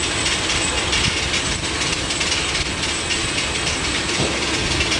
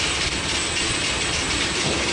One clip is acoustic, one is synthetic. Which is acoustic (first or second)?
first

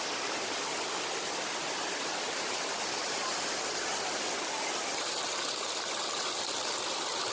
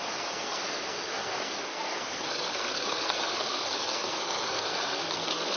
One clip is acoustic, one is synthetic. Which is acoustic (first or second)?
first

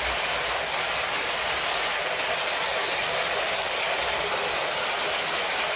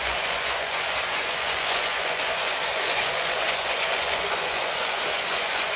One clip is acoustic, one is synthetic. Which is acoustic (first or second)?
first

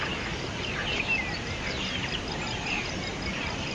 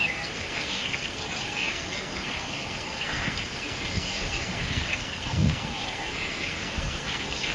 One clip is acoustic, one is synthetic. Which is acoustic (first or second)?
first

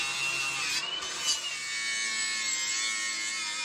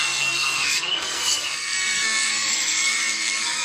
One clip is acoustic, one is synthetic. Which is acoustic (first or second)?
first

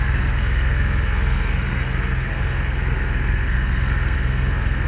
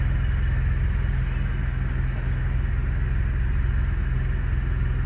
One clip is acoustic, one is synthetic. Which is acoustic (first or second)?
second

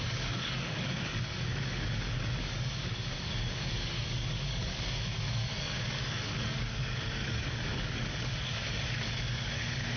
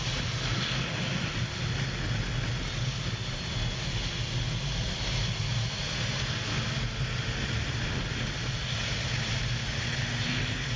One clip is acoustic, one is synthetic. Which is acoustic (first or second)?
second